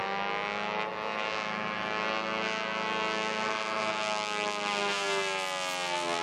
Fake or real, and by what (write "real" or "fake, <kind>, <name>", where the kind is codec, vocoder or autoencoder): real